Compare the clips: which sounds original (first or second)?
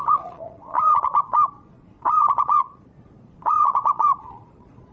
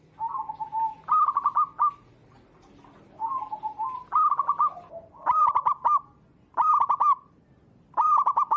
second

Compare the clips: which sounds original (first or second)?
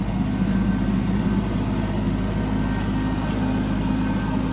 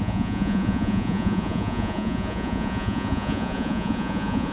first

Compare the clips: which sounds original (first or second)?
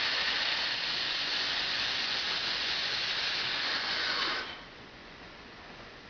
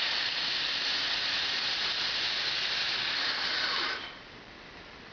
second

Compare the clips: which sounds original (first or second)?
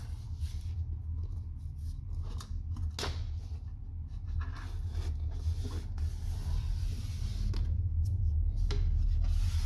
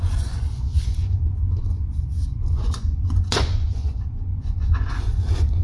first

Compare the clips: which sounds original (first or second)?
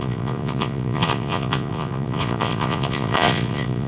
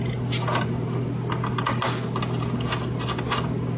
second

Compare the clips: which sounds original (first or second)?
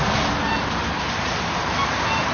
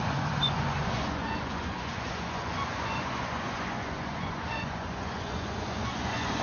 first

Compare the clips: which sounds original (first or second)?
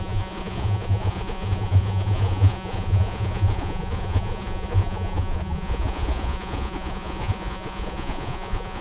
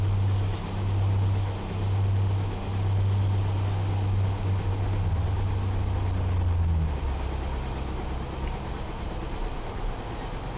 second